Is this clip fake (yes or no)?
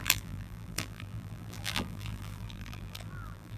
yes